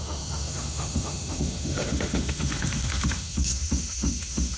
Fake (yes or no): yes